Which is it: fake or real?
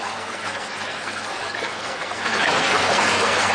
fake